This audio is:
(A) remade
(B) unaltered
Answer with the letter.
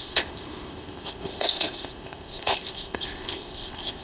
A